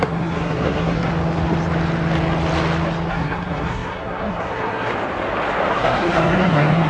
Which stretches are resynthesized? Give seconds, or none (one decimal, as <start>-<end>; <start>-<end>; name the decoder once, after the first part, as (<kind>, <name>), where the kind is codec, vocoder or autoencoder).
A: 0.0-1.1 (codec, SNAC); 3.1-4.9; 5.7-6.9